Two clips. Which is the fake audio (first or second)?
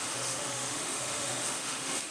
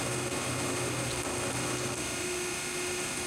first